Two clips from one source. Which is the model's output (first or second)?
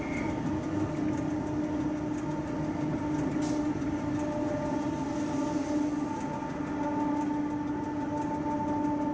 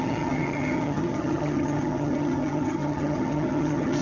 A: second